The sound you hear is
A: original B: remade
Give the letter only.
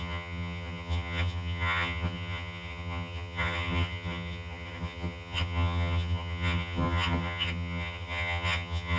B